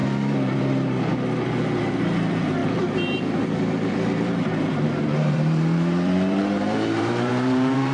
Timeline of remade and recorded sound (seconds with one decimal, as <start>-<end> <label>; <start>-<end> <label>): 0.0-0.6 recorded; 0.6-1.1 remade; 1.1-1.8 recorded; 1.8-7.9 remade